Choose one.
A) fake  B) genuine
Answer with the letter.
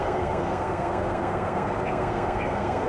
A